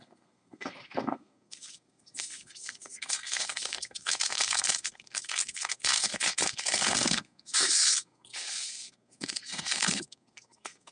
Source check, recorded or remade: remade